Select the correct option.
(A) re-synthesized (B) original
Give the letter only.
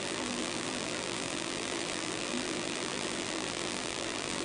A